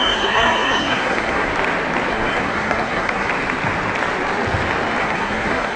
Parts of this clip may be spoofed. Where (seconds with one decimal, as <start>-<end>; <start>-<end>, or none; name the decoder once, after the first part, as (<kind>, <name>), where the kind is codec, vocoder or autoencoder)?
0.0-1.5 (codec, SNAC); 2.1-3.3; 5.0-5.8